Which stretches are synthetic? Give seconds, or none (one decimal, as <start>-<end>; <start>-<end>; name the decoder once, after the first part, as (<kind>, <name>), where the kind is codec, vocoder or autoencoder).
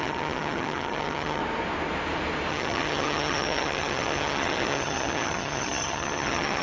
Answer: 0.0-1.4 (vocoder, HiFi-GAN); 2.5-6.6